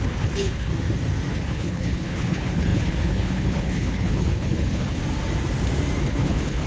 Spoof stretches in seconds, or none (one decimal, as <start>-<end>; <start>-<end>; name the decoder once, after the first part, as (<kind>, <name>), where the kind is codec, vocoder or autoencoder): 0.0-0.7 (codec, HILCodec); 1.3-5.0; 6.0-6.7